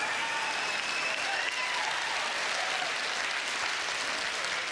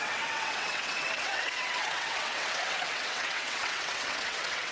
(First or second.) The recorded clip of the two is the first